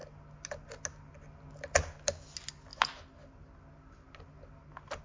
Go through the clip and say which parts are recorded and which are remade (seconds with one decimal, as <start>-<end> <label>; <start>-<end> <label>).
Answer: 0.0-5.0 recorded